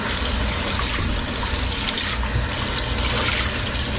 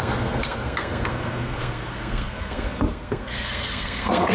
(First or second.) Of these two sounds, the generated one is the second